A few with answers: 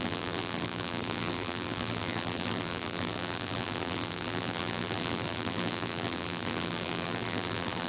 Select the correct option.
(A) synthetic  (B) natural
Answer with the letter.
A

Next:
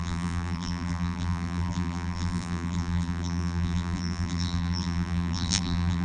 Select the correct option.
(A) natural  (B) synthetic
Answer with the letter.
B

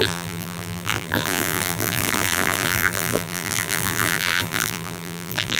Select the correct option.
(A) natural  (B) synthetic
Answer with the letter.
B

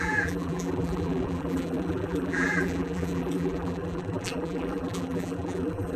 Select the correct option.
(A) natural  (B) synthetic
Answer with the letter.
B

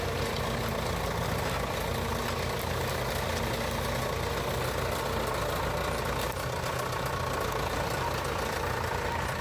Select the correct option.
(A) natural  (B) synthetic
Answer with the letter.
A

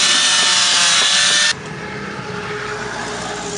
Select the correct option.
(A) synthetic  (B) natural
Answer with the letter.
B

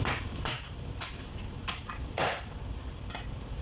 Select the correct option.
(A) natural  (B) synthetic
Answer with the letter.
B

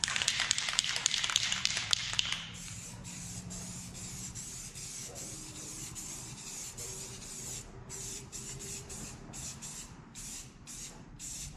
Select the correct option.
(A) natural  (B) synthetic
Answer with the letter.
B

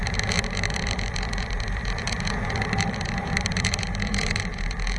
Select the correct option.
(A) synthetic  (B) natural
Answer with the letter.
A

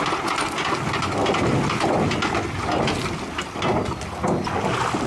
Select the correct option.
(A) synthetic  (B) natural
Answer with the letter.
B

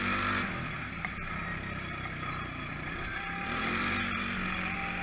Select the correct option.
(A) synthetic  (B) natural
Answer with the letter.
A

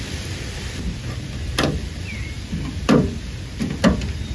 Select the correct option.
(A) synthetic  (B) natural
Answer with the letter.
A